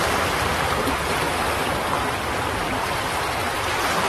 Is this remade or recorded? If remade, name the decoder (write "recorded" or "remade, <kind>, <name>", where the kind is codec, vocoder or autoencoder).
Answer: remade, vocoder, BigVGAN v2